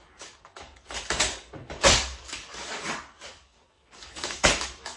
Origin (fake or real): fake